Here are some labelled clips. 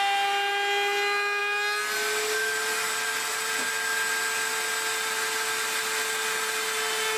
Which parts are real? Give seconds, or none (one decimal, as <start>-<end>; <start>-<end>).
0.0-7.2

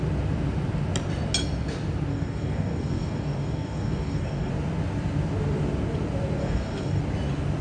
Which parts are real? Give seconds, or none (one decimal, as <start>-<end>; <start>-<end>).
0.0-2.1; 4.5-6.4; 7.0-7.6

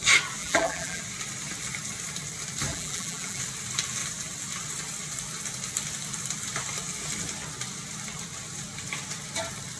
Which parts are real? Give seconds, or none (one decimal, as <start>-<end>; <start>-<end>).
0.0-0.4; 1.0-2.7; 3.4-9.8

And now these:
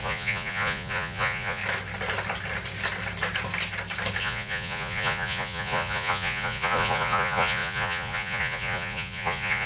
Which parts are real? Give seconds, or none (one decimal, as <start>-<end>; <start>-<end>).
1.6-4.2

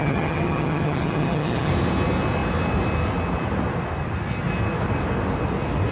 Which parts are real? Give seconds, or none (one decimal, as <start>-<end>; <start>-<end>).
1.7-5.9

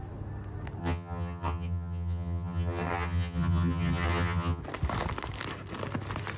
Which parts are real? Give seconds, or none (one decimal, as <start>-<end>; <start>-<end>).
0.0-0.8; 4.6-6.4